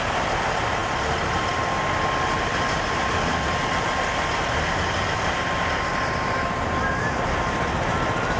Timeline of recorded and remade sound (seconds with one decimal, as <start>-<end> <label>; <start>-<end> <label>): 0.0-8.4 recorded